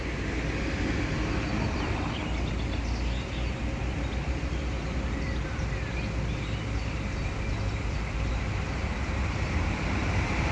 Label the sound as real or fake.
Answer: fake